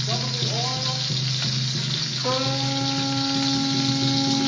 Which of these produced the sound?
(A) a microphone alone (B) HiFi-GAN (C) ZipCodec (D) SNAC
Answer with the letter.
A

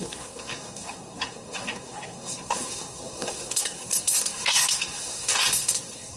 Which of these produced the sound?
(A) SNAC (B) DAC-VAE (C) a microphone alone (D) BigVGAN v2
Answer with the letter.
A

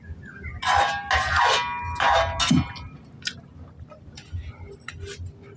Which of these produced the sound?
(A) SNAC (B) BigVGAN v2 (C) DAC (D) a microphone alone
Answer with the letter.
D